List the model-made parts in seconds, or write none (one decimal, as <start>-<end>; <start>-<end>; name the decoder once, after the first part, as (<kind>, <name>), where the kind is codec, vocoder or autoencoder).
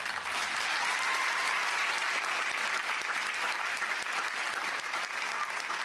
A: none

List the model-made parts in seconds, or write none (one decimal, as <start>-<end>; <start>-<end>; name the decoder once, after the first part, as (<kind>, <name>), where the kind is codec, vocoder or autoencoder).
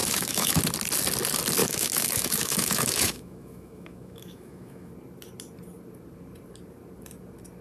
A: 0.0-0.6 (autoencoder, DAC-VAE); 1.6-4.9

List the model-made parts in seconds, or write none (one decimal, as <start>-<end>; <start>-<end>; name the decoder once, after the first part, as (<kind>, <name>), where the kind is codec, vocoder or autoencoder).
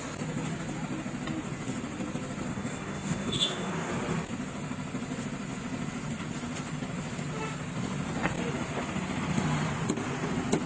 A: 2.5-3.9 (codec, DAC)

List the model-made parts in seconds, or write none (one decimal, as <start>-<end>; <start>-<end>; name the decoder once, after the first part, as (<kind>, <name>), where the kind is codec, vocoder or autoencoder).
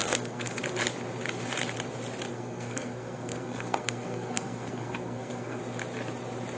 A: 0.0-0.6 (codec, SNAC); 2.3-5.6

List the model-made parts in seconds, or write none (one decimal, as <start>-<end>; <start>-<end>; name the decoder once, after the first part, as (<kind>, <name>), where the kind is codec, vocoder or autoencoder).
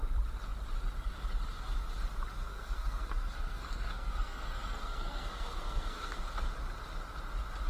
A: 2.4-6.2 (codec, SNAC)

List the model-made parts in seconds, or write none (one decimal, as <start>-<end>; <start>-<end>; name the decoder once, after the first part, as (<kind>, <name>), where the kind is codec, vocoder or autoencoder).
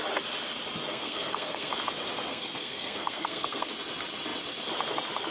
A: 0.9-1.7 (codec, SNAC); 2.3-3.7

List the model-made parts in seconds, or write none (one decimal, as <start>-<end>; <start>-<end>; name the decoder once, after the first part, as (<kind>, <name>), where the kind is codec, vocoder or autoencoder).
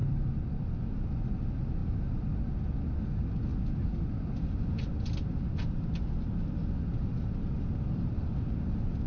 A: 1.8-2.5 (vocoder, BigVGAN v2)